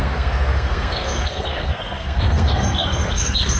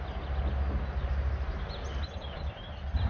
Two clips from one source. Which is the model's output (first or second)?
first